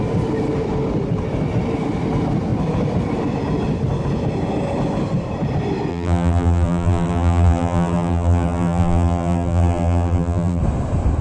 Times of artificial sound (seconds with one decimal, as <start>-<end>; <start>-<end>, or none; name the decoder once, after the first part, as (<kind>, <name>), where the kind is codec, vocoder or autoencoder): 5.9-10.6 (vocoder, BigVGAN v2)